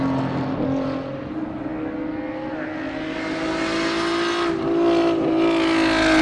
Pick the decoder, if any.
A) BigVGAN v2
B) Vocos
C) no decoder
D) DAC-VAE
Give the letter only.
C